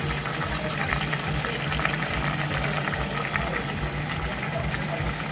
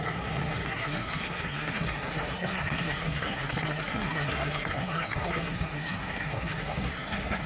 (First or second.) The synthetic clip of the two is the second